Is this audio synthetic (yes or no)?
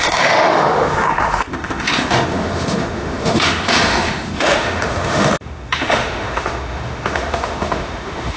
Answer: yes